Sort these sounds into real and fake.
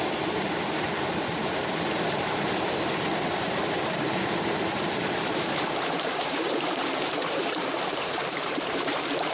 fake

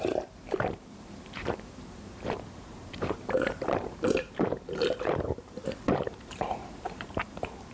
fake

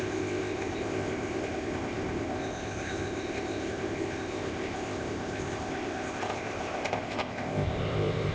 fake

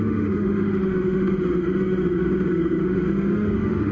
fake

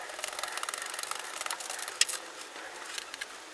real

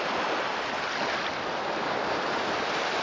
real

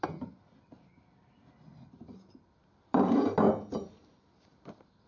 fake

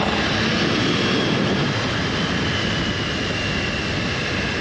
real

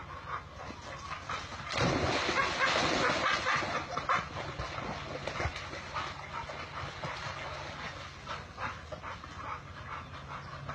real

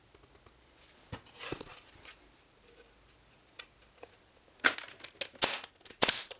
real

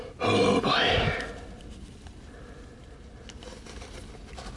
real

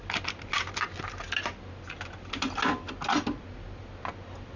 real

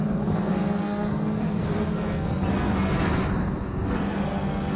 fake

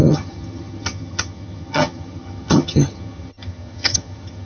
fake